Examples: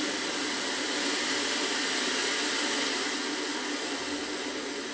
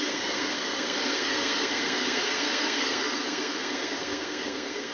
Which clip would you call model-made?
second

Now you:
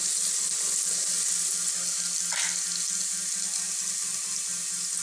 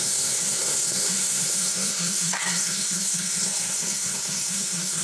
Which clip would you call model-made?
second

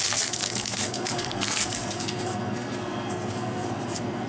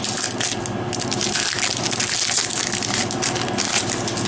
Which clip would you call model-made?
first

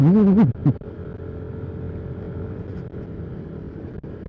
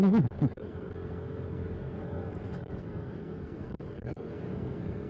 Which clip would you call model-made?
second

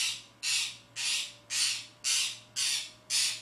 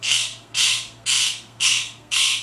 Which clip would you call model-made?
second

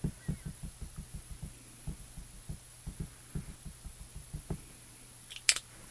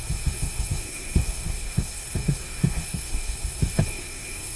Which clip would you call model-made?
second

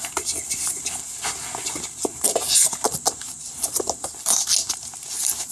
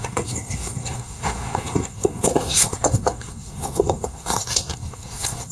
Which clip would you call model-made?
second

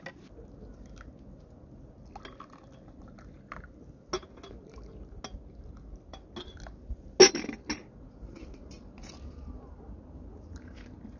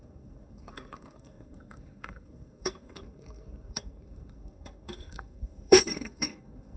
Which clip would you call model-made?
second